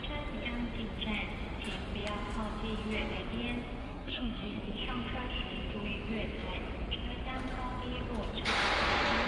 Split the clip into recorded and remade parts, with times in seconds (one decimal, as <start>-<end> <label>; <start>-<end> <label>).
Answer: 0.0-3.8 recorded; 3.8-4.6 remade; 4.6-9.3 recorded